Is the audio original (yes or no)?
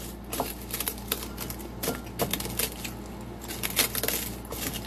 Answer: yes